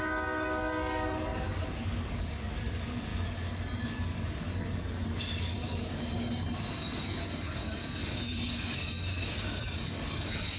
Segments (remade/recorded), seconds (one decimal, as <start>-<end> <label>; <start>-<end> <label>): 0.0-10.6 remade